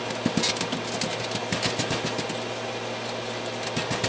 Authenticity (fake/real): real